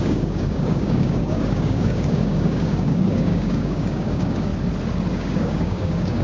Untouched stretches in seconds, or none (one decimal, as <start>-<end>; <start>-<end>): 4.5-5.1